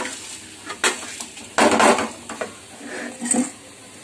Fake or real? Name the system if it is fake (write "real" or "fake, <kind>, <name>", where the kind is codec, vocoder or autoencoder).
real